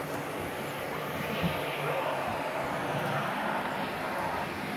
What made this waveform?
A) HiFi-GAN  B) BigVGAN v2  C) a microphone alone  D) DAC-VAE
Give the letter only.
C